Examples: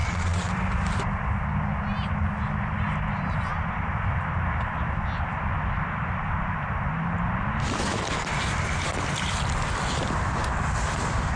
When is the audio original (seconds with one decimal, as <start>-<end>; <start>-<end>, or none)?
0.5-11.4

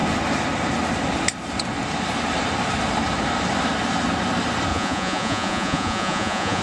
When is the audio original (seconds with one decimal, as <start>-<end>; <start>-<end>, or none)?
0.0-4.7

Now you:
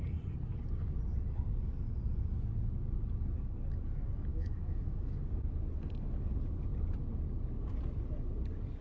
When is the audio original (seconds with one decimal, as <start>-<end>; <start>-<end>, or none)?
0.0-4.3; 5.2-8.8

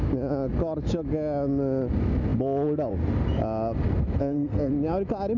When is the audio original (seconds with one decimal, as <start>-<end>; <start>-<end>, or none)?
0.0-4.2; 4.7-5.4

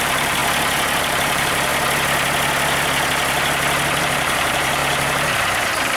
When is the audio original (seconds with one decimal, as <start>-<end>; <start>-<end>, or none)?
0.4-1.0; 1.7-4.0

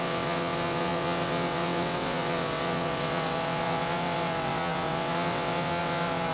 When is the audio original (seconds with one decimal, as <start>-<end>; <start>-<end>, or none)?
none